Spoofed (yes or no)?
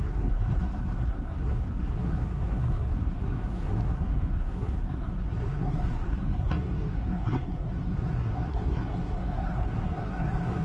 yes